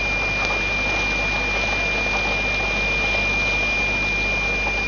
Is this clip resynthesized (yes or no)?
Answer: no